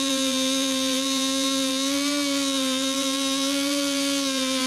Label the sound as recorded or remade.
remade